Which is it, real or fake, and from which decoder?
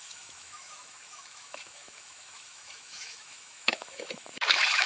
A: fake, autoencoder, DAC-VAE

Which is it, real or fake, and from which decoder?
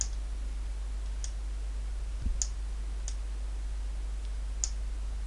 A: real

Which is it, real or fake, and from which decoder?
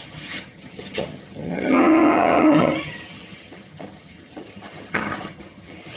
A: fake, vocoder, HiFi-GAN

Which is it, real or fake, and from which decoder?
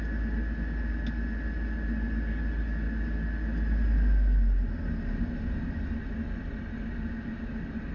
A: real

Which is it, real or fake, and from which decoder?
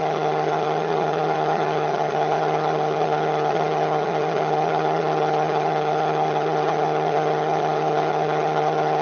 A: fake, vocoder, HiFi-GAN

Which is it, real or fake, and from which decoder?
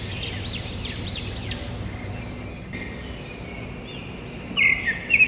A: real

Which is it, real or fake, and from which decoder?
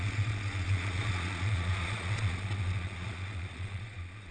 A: fake, vocoder, Vocos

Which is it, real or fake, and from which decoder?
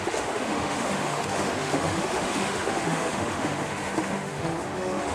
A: fake, autoencoder, DAC-VAE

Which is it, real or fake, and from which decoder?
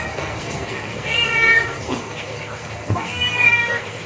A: fake, codec, SNAC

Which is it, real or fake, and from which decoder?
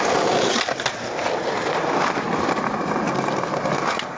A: real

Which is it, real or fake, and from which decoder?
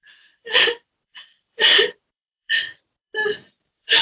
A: fake, vocoder, BigVGAN v2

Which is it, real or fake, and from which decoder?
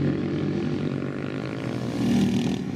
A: real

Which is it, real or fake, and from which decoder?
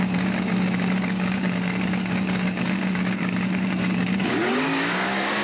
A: fake, codec, DAC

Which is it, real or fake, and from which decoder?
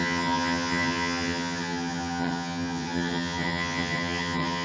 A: fake, vocoder, HiFi-GAN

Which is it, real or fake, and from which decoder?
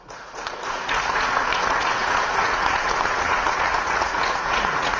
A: fake, vocoder, Vocos